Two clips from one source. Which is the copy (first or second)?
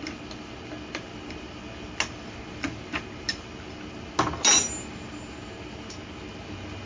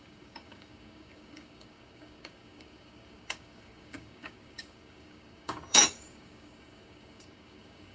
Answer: second